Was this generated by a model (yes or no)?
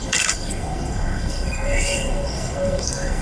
yes